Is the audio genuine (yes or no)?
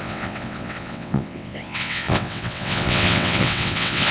no